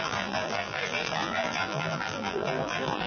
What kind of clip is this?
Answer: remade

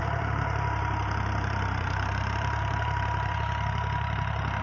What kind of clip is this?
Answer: remade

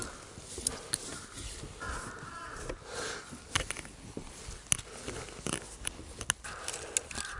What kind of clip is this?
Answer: recorded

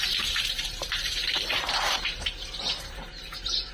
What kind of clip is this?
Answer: remade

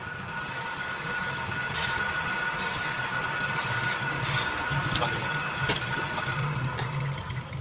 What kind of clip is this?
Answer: recorded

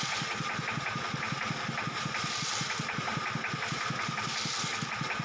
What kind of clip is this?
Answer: recorded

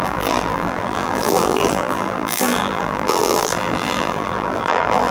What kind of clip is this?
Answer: remade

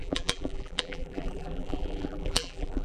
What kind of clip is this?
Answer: remade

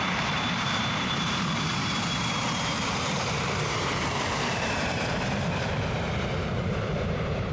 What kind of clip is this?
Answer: remade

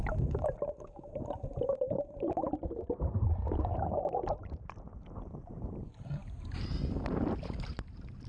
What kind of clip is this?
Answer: remade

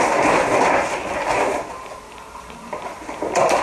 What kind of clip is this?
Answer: remade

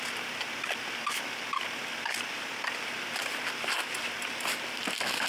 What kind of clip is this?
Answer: remade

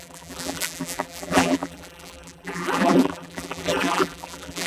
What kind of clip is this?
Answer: remade